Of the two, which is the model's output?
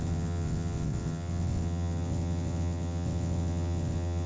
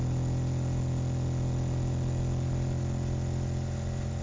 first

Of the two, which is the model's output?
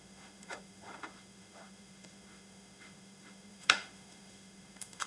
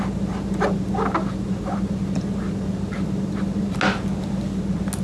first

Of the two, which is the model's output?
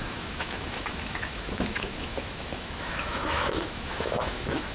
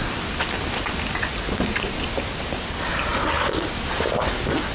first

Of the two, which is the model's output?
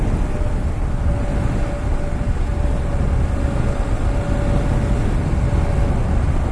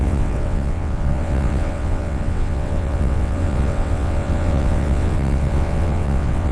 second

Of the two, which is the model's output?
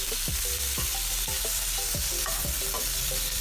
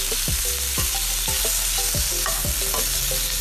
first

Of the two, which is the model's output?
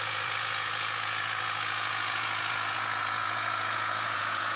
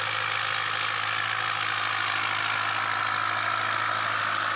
first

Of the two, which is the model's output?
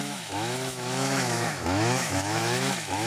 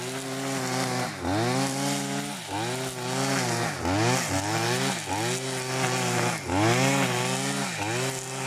first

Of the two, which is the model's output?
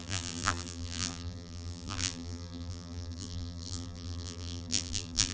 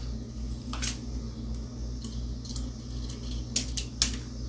first